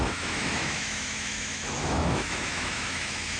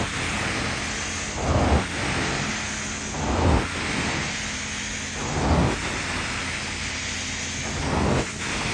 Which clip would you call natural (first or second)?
second